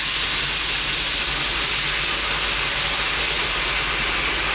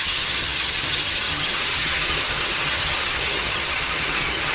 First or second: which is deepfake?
second